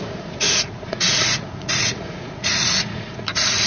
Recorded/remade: remade